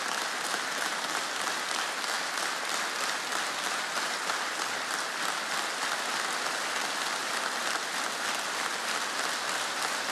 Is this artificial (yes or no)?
no